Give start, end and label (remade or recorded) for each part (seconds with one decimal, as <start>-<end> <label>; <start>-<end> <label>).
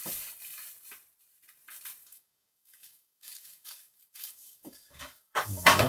0.0-2.1 recorded; 2.1-5.9 remade